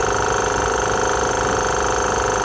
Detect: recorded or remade recorded